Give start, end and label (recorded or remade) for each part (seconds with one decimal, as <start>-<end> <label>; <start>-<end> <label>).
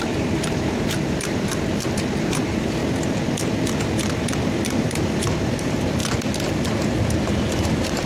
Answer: 0.0-1.5 remade; 1.5-2.2 recorded; 2.2-2.8 remade; 2.8-4.7 recorded; 4.7-6.0 remade; 6.0-6.8 recorded; 6.8-8.1 remade